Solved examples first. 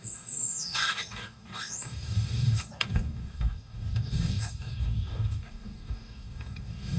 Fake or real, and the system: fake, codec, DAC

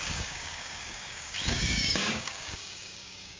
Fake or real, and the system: fake, codec, DAC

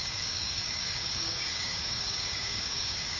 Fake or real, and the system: fake, codec, DAC